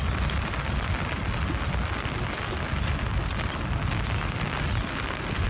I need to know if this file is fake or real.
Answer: real